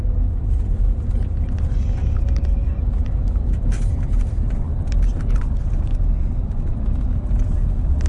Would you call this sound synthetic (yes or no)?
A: no